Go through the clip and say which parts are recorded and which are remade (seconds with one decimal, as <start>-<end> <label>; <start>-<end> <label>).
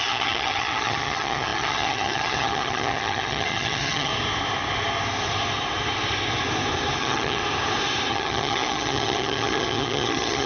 0.0-4.1 remade; 4.1-7.0 recorded; 7.0-7.4 remade; 7.4-8.1 recorded; 8.1-10.5 remade